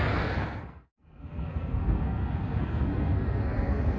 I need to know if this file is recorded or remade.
remade